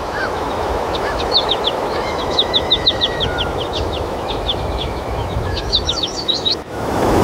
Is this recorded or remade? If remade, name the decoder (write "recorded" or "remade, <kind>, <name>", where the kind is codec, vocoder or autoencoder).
remade, autoencoder, DAC-VAE